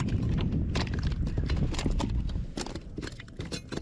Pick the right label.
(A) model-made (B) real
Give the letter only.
B